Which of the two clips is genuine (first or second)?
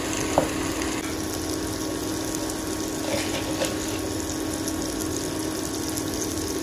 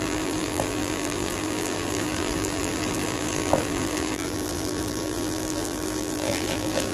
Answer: first